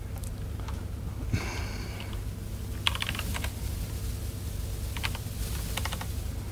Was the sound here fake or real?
real